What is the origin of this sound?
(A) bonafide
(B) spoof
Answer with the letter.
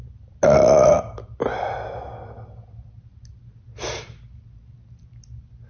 A